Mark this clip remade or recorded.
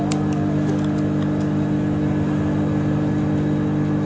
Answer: recorded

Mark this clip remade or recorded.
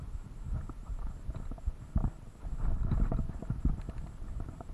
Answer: recorded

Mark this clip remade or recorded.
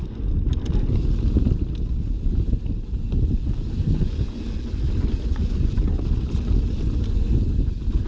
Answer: recorded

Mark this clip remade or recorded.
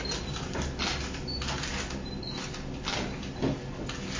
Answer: recorded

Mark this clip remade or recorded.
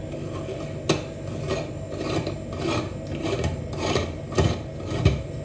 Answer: recorded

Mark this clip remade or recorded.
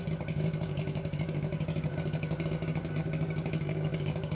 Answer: remade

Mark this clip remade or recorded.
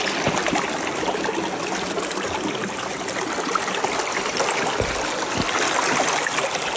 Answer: recorded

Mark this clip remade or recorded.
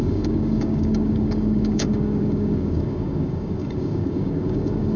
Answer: remade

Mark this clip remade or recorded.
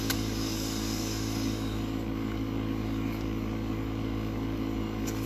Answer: remade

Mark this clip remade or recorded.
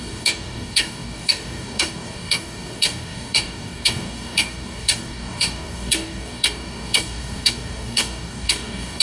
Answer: remade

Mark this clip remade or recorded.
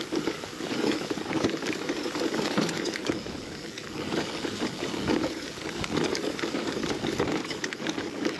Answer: remade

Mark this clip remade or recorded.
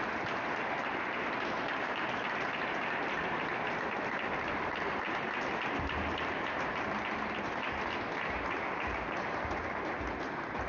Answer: recorded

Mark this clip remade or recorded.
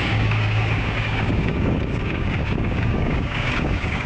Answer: remade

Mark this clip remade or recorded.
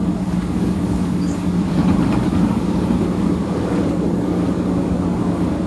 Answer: remade